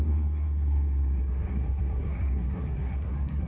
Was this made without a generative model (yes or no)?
no